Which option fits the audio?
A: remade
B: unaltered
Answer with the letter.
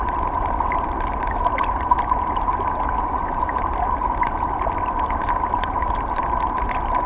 B